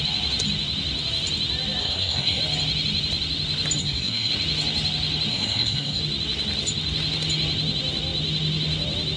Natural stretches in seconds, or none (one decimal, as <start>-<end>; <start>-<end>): 0.0-1.8; 2.4-3.8; 4.3-5.3; 6.0-9.2